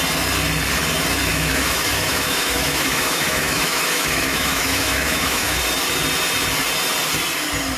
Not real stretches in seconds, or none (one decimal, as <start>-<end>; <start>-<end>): 1.3-5.6